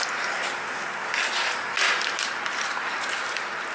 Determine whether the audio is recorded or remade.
recorded